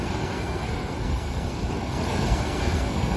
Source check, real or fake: fake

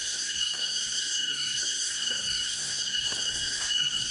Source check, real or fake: fake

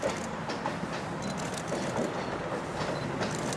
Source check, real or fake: real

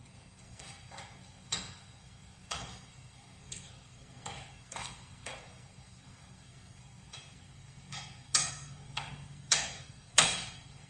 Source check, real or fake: fake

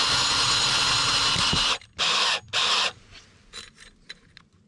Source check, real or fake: real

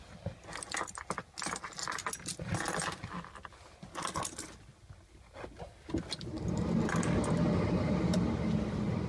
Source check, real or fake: real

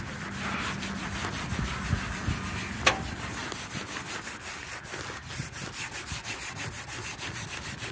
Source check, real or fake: real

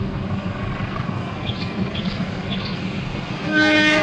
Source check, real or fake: fake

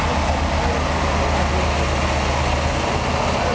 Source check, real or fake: real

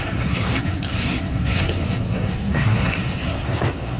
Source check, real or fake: fake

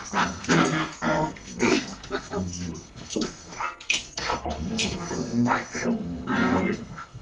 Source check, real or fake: fake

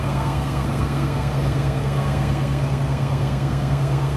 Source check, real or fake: fake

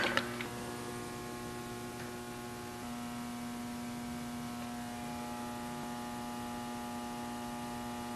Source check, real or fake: real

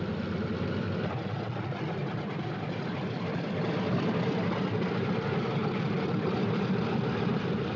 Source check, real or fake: real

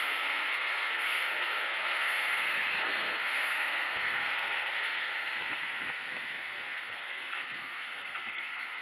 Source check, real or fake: fake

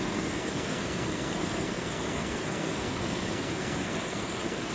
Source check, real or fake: fake